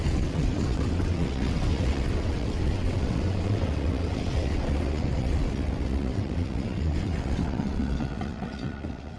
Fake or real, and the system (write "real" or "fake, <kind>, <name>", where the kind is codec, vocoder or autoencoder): fake, vocoder, WaveNeXt